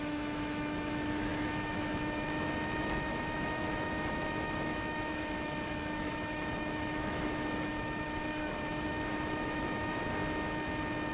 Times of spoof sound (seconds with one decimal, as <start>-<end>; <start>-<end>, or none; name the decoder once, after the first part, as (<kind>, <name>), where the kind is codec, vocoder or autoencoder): 0.0-10.2 (autoencoder, DAC-VAE)